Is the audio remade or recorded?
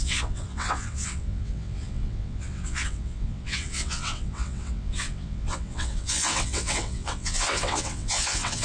remade